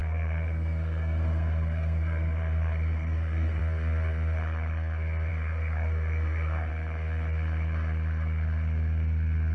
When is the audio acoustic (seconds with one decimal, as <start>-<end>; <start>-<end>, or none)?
3.6-5.3; 6.7-9.5